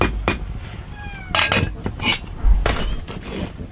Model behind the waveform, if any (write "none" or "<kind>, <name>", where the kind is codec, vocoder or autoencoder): none